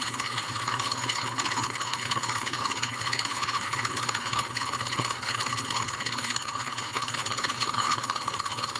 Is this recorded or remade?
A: remade